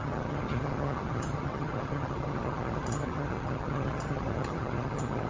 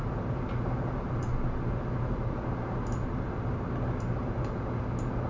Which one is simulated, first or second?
first